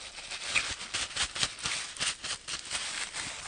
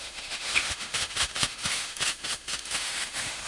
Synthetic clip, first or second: second